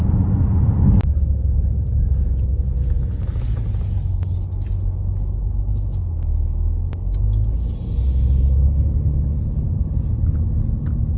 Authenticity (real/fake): real